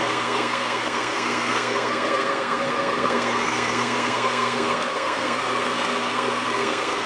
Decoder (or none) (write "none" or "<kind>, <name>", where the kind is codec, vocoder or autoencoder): codec, SNAC